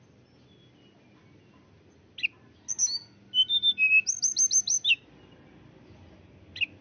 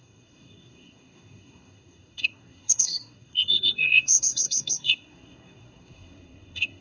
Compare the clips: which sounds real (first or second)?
first